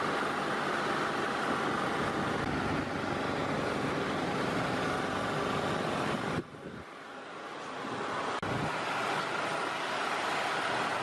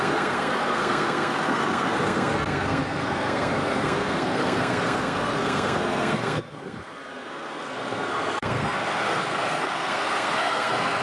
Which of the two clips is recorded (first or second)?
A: first